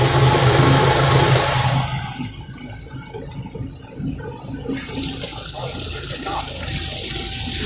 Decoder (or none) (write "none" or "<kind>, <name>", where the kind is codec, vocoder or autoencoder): none